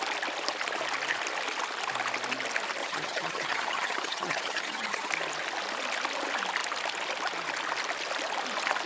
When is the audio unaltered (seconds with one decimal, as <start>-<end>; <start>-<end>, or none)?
0.0-2.8; 5.1-8.9